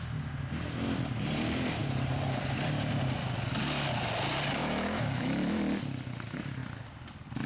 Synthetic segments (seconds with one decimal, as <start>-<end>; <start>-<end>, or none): 4.6-5.7